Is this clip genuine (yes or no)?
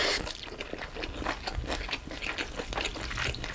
yes